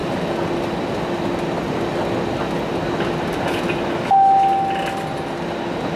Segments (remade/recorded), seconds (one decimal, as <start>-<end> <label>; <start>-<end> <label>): 0.0-6.0 recorded